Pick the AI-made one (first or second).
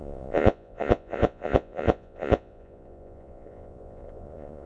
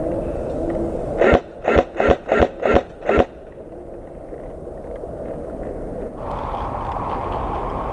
first